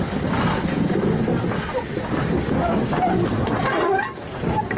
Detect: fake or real real